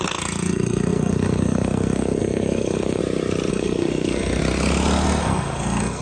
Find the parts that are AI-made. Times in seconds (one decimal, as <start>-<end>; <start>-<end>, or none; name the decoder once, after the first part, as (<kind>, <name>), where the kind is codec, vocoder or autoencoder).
0.0-3.0 (codec, SNAC); 3.5-4.4; 5.2-6.0